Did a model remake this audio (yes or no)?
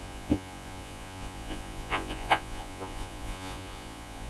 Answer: yes